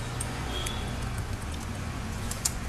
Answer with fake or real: fake